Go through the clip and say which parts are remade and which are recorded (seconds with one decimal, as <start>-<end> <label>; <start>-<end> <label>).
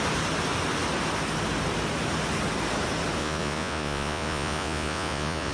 0.0-3.2 recorded; 3.2-5.5 remade